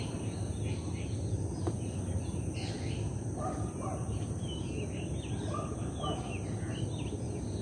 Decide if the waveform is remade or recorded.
recorded